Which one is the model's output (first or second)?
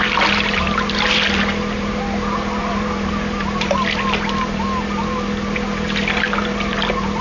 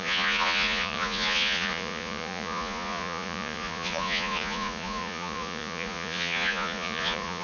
second